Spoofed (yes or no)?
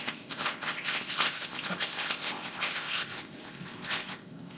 yes